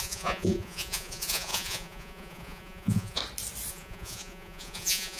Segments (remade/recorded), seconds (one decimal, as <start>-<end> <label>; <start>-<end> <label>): 0.0-3.2 remade; 3.2-3.7 recorded; 3.7-5.2 remade